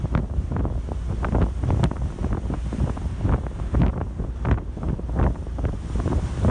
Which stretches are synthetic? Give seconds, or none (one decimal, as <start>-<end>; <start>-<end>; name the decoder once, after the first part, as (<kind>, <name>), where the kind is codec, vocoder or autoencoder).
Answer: none